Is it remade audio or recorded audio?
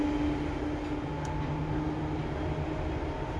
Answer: recorded